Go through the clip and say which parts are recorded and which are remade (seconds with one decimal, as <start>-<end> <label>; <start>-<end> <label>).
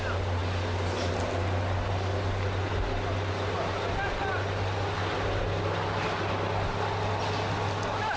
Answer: 0.0-8.2 recorded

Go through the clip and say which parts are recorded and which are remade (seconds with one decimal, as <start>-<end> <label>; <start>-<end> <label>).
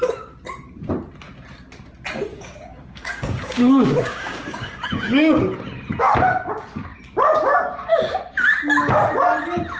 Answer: 0.0-2.3 recorded; 2.3-5.4 remade; 5.4-9.8 recorded